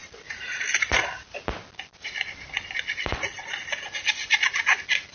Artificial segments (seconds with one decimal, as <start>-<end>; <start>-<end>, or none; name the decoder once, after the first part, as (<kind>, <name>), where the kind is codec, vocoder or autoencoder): 1.5-3.5 (vocoder, BigVGAN v2)